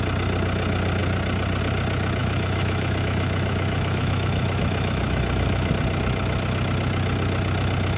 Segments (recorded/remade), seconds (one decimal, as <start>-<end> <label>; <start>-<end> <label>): 0.0-2.2 recorded; 2.2-5.7 remade; 5.7-8.0 recorded